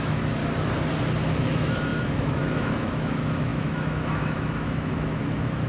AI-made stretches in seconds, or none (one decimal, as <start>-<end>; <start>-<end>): 0.0-0.4; 1.3-5.7